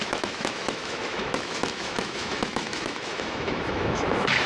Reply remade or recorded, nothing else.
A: remade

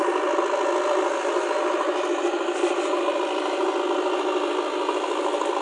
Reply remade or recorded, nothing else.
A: recorded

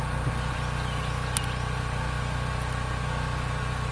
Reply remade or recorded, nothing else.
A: recorded